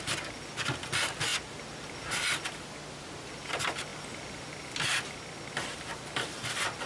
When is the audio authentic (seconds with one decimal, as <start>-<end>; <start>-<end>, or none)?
0.0-6.9